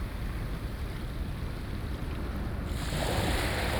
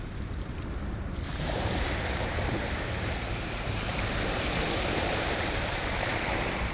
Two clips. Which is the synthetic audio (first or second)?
second